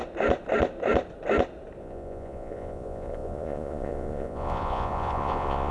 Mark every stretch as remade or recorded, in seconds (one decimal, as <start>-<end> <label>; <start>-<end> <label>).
0.0-1.8 recorded; 1.8-5.7 remade